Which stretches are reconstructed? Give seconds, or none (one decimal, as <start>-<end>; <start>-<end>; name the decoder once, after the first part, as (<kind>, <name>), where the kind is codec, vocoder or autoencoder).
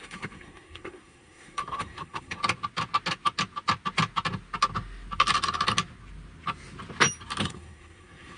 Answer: 0.0-2.4 (codec, SNAC); 7.4-8.4